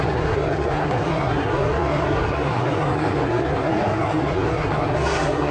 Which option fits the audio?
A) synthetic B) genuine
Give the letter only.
A